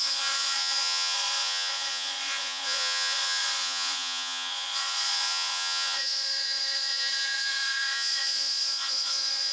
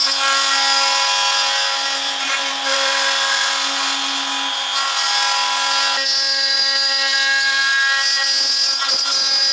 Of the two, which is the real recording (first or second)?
second